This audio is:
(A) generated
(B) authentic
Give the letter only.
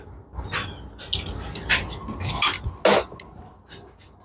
B